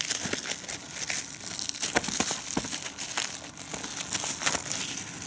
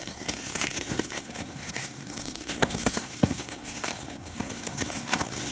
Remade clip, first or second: second